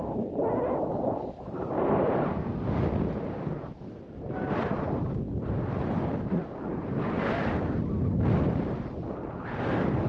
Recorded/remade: recorded